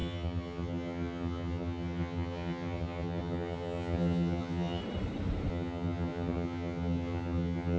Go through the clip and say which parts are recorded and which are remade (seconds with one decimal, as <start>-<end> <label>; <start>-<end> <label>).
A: 0.0-4.8 remade; 4.8-5.5 recorded; 5.5-7.8 remade